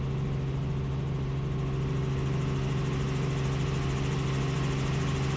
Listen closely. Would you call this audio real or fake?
real